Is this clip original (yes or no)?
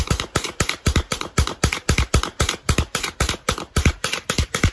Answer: no